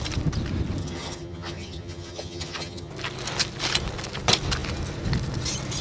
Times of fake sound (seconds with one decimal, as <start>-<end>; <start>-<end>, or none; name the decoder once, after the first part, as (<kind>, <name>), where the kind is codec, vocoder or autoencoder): 0.8-2.9 (vocoder, HiFi-GAN)